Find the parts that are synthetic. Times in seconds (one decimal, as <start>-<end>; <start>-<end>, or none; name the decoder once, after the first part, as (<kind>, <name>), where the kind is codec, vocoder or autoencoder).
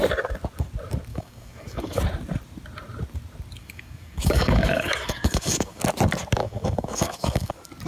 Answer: 1.1-2.0 (codec, DAC); 3.6-5.8; 6.4-7.5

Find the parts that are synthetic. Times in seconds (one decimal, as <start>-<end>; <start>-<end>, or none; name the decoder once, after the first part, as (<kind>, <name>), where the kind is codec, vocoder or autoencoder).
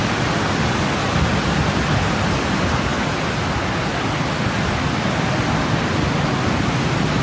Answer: none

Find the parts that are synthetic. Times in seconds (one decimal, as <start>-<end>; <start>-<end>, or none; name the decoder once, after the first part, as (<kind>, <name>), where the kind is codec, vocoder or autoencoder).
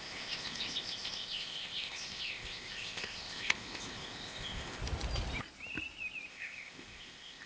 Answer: 0.0-4.8 (codec, ZipCodec); 6.3-7.5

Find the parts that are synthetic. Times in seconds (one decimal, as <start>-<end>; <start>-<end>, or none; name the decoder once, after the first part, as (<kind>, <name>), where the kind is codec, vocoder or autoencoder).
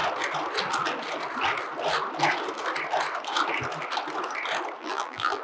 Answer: 4.8-5.4 (vocoder, BigVGAN v2)